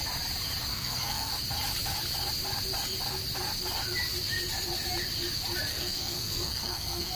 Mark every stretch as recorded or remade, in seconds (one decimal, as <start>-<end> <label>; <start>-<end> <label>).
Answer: 0.0-0.7 recorded; 0.7-1.3 remade; 1.3-5.7 recorded; 5.7-7.2 remade